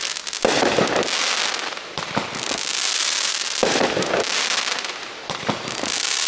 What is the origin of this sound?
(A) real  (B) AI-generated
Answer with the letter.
A